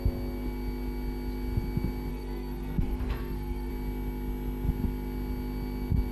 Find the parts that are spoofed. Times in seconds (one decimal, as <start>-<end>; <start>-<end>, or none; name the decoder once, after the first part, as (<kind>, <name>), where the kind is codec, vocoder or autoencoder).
2.1-3.7 (codec, SNAC)

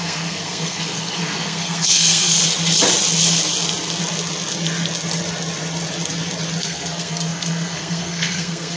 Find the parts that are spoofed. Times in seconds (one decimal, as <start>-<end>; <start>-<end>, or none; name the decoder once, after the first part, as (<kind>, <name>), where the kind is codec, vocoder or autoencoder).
0.0-2.4 (codec, SNAC); 6.6-8.8

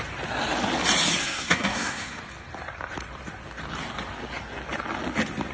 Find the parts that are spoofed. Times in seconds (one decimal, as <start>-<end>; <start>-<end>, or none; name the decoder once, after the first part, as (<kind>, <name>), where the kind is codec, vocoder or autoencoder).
1.2-2.2 (codec, SNAC)

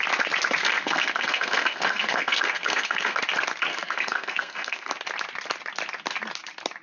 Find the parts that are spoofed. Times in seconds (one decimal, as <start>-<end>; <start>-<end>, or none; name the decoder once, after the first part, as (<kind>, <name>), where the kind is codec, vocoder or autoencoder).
0.6-3.2 (codec, SNAC); 3.7-4.9

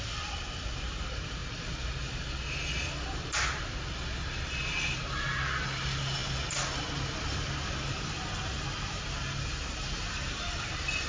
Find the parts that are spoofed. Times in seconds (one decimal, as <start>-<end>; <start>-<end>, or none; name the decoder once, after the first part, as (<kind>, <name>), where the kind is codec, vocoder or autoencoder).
none

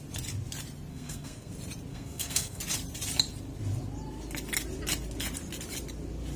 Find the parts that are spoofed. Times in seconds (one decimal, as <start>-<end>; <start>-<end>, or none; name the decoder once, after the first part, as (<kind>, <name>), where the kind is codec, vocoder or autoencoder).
0.9-1.5 (codec, SNAC); 1.9-2.6

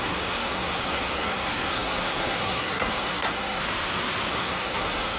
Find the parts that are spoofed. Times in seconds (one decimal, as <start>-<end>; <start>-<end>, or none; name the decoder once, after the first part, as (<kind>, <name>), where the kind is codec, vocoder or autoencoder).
0.0-3.6 (codec, SNAC); 4.3-5.2

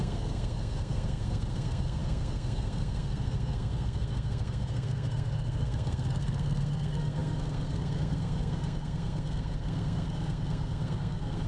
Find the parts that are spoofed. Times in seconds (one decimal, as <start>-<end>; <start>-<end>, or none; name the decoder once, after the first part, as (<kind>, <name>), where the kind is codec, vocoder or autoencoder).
0.0-11.5 (codec, SNAC)